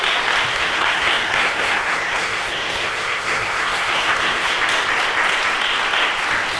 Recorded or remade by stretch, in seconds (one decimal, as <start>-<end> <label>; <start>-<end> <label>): 0.0-0.5 recorded; 0.5-4.5 remade; 4.5-6.6 recorded